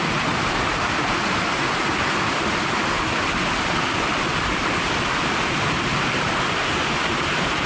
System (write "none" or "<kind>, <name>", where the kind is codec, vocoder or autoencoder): none